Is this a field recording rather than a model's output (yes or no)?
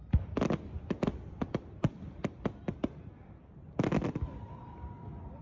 no